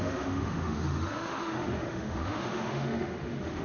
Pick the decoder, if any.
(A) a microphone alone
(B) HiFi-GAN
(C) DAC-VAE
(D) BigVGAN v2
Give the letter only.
C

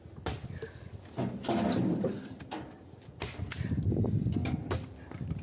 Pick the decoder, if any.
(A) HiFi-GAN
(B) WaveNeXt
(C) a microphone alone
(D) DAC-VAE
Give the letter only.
C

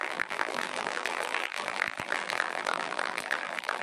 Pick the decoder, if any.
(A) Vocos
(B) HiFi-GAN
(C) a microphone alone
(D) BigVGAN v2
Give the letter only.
D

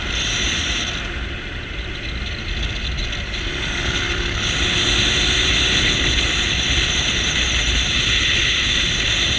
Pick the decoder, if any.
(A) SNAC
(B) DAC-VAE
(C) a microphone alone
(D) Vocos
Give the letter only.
C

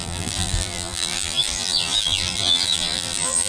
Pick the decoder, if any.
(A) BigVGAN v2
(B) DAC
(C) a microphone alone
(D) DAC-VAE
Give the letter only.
A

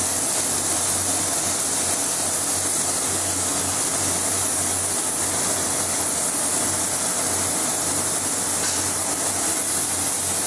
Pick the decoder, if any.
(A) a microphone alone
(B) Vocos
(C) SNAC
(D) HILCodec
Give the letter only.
A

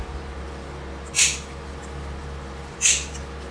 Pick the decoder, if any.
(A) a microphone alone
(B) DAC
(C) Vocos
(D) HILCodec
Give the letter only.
A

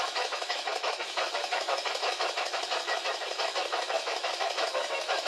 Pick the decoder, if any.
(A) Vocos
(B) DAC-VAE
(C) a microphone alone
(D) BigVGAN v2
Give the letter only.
B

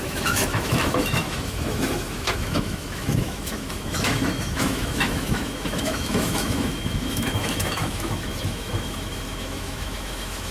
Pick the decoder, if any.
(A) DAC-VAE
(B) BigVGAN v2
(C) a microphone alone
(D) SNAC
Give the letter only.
A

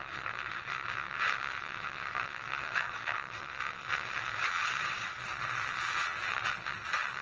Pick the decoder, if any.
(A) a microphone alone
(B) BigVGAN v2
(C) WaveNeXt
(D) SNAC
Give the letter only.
C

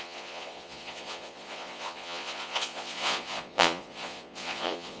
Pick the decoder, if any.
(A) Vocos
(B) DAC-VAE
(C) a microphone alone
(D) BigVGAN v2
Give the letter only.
A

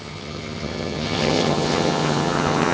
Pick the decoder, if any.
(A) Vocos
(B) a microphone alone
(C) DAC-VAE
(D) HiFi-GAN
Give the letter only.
D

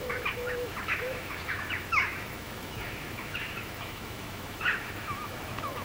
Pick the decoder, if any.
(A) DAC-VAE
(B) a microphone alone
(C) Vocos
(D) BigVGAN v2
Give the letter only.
A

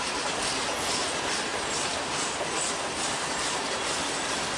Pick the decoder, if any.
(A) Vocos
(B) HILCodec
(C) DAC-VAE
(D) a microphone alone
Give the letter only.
D